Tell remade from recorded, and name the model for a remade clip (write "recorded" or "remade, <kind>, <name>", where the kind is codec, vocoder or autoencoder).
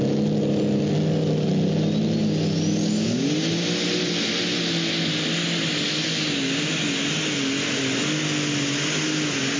recorded